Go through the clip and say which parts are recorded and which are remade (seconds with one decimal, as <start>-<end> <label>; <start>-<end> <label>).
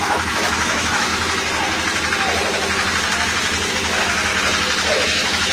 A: 0.0-1.1 remade; 1.1-3.7 recorded; 3.7-4.3 remade; 4.3-4.9 recorded; 4.9-5.5 remade